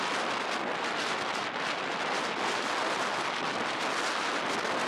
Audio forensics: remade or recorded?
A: recorded